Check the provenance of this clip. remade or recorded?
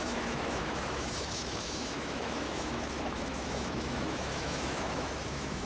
remade